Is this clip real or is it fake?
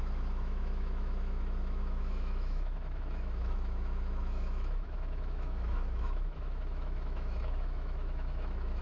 fake